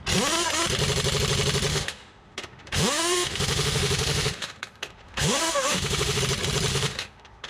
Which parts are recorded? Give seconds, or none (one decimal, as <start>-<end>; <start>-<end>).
0.0-1.7; 6.2-6.7